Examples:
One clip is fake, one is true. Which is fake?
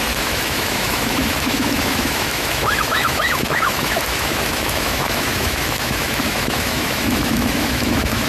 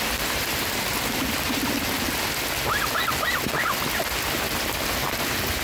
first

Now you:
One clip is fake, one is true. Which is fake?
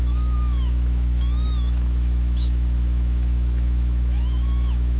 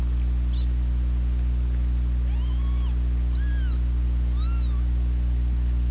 first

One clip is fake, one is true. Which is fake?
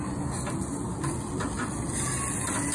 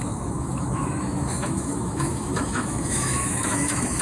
second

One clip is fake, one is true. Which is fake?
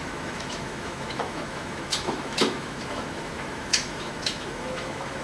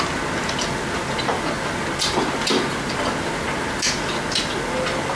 first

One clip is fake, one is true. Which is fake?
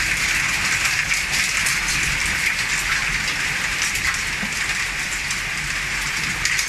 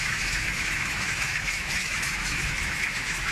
second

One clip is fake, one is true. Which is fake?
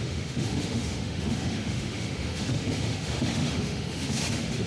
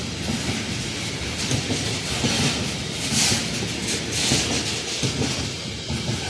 first